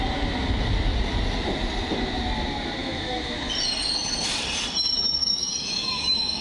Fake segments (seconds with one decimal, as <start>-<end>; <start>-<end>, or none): 2.8-3.5; 5.2-6.4